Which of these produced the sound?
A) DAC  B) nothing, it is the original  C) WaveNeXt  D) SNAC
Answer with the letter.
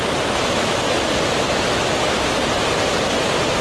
B